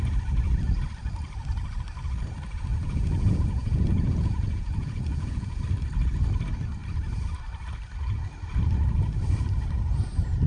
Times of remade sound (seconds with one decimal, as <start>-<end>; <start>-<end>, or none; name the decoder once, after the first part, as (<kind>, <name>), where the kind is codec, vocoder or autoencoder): 2.7-5.6 (vocoder, Vocos)